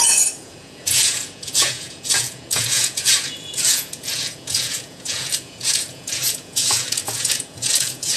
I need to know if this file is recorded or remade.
remade